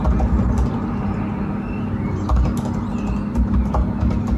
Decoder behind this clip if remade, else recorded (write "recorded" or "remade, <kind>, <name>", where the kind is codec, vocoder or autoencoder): recorded